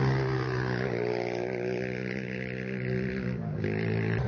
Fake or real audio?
real